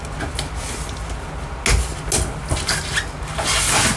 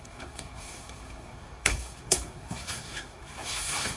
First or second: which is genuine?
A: first